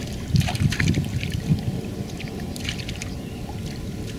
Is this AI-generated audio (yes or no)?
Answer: no